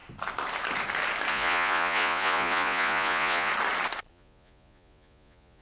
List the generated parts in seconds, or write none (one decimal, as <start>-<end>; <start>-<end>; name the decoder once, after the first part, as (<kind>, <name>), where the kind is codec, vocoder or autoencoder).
1.3-3.5 (vocoder, Vocos); 4.1-5.6